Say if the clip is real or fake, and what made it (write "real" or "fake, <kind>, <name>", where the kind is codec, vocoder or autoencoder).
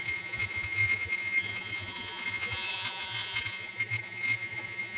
fake, vocoder, Vocos